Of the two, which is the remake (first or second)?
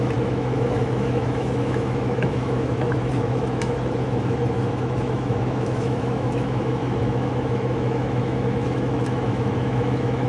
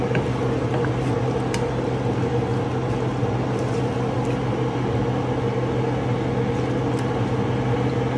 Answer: first